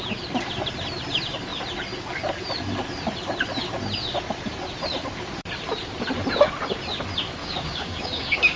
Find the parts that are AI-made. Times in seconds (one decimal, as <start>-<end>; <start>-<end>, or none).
7.4-8.6